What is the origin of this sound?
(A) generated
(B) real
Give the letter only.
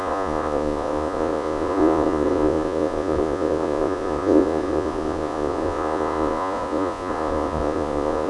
A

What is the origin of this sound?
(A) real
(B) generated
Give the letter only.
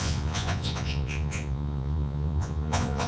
B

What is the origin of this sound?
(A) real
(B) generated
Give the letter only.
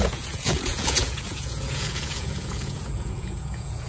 B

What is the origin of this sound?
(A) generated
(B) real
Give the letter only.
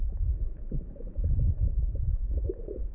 A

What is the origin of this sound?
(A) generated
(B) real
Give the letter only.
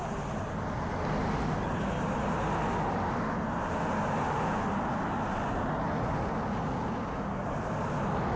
B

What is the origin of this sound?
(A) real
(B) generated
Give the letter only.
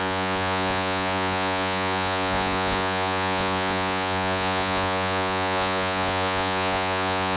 B